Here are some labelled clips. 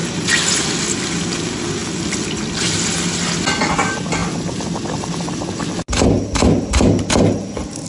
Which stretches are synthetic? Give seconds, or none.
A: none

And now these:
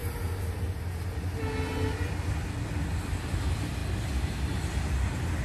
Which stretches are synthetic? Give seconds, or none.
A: none

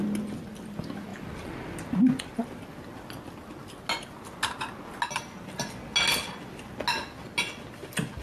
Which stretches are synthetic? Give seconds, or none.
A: none